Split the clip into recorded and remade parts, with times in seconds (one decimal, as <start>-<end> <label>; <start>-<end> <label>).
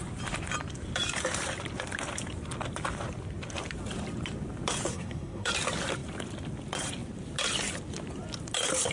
0.0-4.9 recorded; 4.9-5.5 remade; 5.5-8.9 recorded